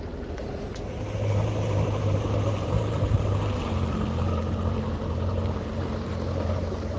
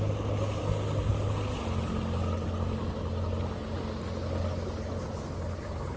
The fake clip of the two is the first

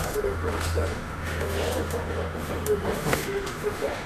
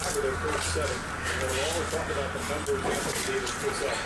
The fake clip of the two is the first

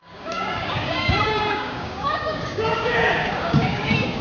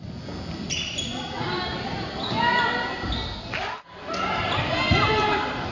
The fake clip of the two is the first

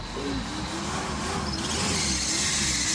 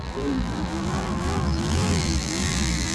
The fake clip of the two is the second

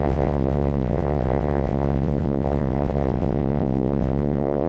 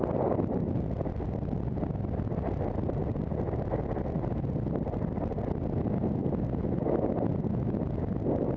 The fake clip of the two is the first